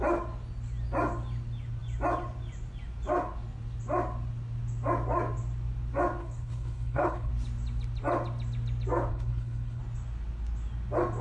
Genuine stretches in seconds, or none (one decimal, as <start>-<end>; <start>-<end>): 0.0-6.2; 7.3-9.1; 9.8-11.2